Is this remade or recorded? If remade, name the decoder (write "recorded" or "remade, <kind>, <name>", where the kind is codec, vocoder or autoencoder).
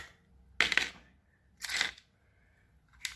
recorded